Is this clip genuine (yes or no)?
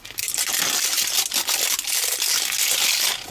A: yes